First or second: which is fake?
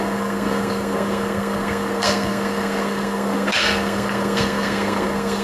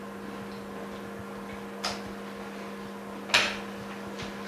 first